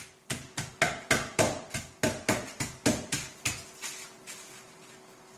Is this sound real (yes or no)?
yes